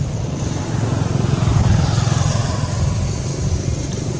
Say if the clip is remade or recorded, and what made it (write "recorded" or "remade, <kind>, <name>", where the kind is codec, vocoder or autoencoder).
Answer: recorded